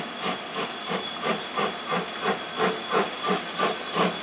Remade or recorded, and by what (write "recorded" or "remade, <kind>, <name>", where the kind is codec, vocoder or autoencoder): recorded